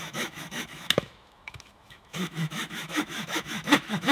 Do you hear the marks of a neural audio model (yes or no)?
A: yes